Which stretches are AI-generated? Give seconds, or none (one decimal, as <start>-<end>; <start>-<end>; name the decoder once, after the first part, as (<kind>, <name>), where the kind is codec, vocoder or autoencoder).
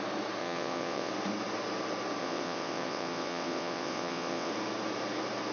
0.4-1.1 (vocoder, WaveNeXt); 2.2-4.5